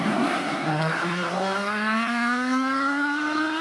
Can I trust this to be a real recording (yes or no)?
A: no